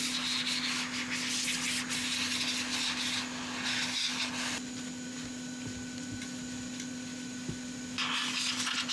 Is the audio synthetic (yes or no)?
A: no